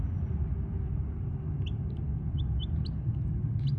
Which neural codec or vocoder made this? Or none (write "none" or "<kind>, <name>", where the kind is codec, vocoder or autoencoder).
none